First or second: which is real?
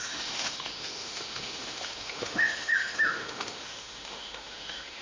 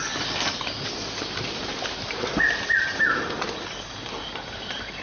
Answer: second